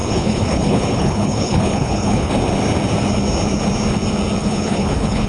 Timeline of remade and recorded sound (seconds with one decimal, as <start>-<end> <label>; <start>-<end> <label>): 0.0-2.3 remade; 2.3-4.4 recorded; 4.4-5.3 remade